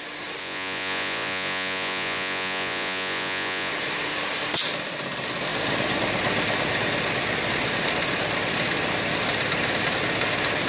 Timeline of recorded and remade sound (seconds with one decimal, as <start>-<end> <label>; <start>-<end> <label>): 0.0-0.4 recorded; 0.4-3.7 remade; 3.7-10.7 recorded